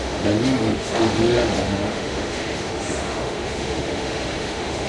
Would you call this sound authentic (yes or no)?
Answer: no